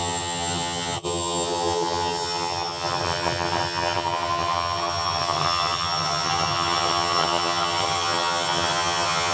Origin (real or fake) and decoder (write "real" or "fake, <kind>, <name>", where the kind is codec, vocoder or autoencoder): fake, vocoder, HiFi-GAN